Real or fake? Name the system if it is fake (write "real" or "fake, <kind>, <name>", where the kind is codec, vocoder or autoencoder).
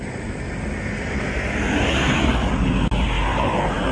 real